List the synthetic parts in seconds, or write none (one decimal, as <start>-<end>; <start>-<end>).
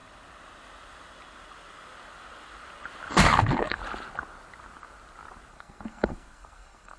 3.1-3.8; 5.5-7.0